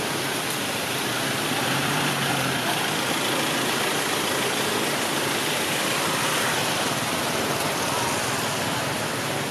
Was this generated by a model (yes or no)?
yes